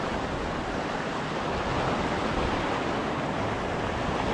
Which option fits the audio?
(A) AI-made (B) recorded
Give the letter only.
B